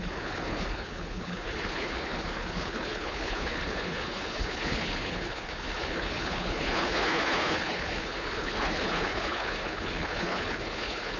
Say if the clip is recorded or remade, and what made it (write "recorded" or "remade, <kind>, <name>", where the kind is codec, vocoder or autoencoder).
remade, codec, HILCodec